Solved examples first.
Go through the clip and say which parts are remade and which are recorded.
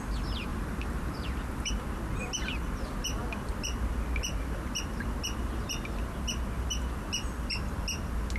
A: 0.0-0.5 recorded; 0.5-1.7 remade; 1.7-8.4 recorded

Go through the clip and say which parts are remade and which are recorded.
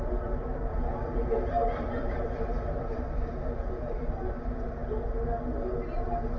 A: 0.0-0.7 recorded; 0.7-4.3 remade; 4.3-6.4 recorded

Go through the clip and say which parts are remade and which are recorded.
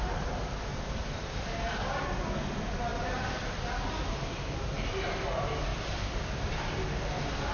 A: 0.0-0.7 recorded; 0.7-2.0 remade; 2.0-2.9 recorded; 2.9-3.6 remade; 3.6-5.7 recorded; 5.7-6.6 remade; 6.6-7.5 recorded